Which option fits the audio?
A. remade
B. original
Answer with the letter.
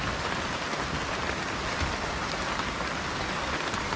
B